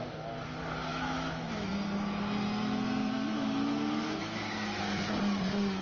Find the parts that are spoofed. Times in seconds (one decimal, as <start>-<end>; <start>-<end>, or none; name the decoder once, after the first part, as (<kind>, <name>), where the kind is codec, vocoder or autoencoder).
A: 0.9-1.7 (autoencoder, DAC-VAE); 3.0-4.8